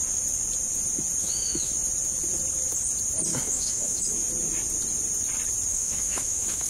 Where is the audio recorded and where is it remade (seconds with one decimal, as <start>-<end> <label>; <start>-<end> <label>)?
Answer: 0.0-1.2 recorded; 1.2-1.7 remade; 1.7-3.3 recorded; 3.3-4.1 remade; 4.1-5.7 recorded; 5.7-6.7 remade